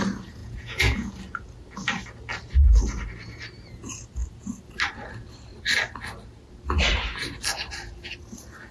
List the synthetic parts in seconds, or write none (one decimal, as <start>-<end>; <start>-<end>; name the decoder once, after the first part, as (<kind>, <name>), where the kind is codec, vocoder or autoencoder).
0.4-1.1 (vocoder, Vocos)